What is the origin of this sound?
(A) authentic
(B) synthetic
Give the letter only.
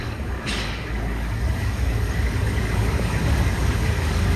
B